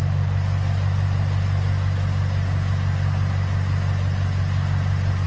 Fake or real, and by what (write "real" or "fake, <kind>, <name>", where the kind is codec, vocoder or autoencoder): real